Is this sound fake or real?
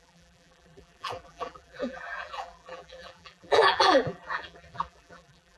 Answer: fake